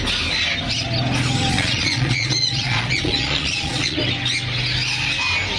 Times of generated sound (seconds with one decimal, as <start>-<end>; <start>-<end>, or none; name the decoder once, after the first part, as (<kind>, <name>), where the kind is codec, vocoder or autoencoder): 1.5-4.0 (vocoder, Vocos)